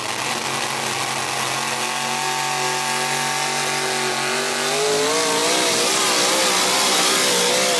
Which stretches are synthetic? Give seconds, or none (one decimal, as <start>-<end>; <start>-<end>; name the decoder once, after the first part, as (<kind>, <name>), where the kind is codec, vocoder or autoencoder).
none